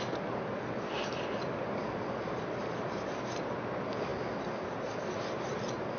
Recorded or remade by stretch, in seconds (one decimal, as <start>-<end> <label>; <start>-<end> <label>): 0.0-6.0 recorded